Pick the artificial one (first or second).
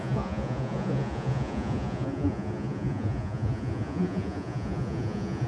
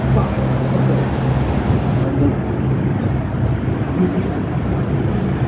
first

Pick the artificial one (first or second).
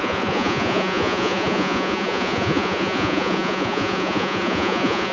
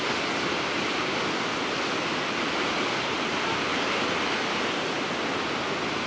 first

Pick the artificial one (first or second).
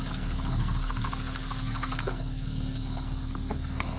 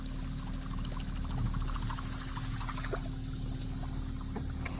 first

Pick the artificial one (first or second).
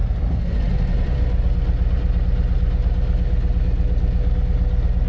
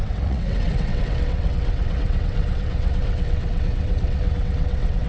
second